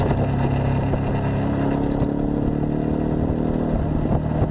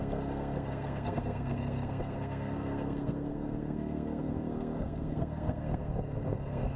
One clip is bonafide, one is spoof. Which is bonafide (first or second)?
first